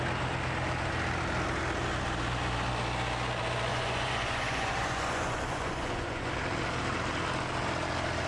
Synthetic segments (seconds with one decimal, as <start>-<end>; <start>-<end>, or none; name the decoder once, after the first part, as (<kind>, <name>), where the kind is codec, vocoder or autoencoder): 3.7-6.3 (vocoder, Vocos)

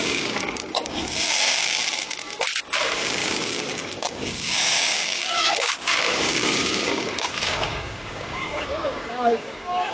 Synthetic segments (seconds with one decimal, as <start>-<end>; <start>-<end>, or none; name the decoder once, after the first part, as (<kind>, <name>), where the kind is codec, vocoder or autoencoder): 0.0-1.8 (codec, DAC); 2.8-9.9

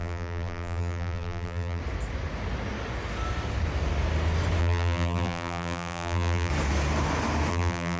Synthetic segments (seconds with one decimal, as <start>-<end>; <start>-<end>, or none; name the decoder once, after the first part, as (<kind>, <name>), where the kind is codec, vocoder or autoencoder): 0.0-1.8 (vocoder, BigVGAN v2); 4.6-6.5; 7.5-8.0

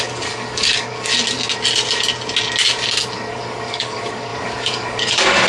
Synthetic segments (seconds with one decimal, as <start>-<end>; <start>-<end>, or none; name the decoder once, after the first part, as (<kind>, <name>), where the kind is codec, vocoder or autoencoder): 0.0-1.1 (codec, DAC); 3.3-5.5

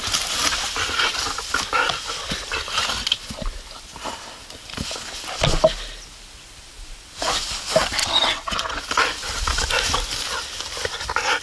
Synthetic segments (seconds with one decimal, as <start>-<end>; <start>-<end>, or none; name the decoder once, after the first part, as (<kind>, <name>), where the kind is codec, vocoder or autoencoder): 8.0-8.8 (vocoder, WaveNeXt)

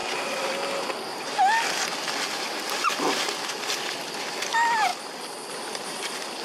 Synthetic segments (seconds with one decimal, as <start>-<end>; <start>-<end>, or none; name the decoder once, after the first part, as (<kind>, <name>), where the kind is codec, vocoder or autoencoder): none